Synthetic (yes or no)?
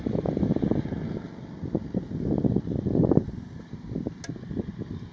no